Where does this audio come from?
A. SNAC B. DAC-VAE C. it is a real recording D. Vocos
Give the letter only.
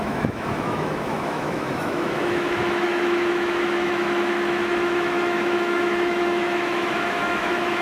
B